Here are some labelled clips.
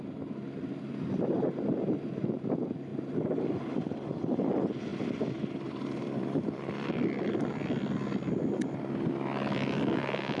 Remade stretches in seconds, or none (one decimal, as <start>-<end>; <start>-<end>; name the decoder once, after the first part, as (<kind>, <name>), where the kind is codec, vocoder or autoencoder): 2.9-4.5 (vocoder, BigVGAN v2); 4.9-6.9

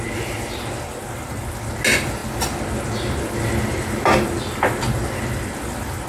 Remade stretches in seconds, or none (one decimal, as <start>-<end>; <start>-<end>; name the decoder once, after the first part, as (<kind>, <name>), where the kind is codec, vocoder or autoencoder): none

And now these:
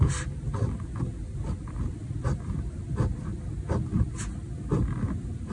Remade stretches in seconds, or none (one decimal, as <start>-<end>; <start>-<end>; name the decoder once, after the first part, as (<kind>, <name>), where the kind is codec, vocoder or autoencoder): none

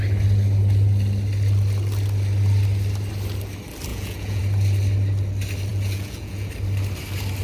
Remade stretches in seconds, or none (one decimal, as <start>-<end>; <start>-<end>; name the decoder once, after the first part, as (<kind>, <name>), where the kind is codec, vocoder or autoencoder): 3.9-4.4 (vocoder, Vocos); 5.7-6.5

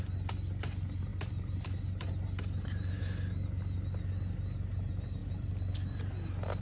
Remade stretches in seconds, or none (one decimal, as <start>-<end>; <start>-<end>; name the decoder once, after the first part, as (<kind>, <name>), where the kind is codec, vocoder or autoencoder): none

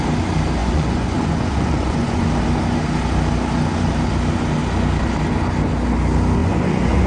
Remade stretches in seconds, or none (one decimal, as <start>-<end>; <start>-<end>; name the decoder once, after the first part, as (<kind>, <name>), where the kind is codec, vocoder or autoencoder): 0.6-2.3 (vocoder, Vocos); 6.4-7.1